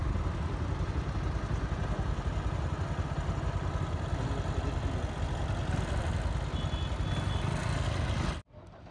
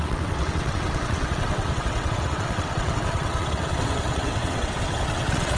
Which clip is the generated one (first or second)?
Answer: second